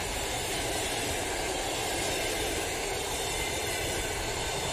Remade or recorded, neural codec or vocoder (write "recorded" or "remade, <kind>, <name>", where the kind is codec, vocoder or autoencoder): recorded